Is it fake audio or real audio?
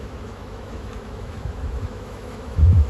fake